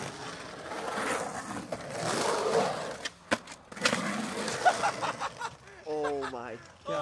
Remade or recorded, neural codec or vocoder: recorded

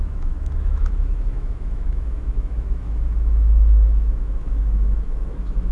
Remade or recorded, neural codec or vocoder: remade, autoencoder, DAC-VAE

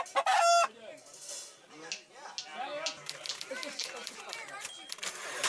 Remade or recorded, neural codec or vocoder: recorded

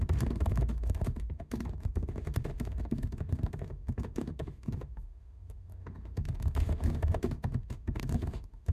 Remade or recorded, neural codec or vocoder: remade, autoencoder, DAC-VAE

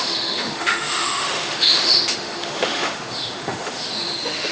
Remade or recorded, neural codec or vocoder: remade, autoencoder, DAC-VAE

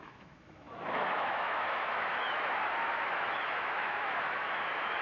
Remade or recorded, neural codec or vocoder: remade, autoencoder, DAC-VAE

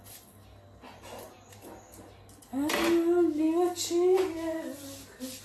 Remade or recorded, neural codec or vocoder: recorded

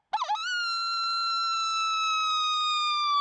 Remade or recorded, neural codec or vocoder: recorded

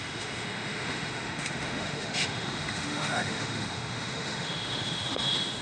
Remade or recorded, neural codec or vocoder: remade, autoencoder, DAC-VAE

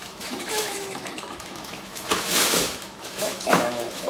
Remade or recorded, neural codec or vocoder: remade, autoencoder, DAC-VAE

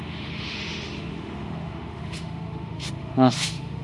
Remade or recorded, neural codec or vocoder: remade, autoencoder, DAC-VAE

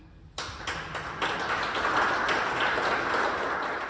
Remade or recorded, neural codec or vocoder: recorded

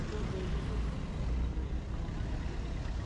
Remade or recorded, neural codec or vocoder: recorded